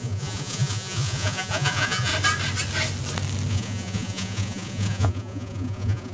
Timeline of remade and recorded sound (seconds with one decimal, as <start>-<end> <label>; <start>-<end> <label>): 0.0-2.1 remade; 2.1-3.5 recorded; 3.5-6.1 remade